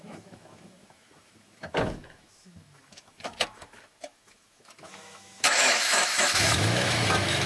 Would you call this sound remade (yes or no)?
yes